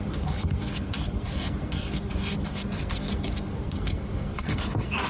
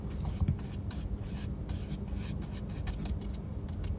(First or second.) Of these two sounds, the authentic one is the second